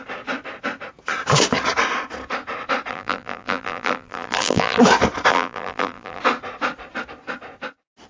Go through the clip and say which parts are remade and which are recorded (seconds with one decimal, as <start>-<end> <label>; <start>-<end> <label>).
0.0-2.9 recorded; 2.9-4.8 remade; 4.8-5.3 recorded; 5.3-6.2 remade; 6.2-8.1 recorded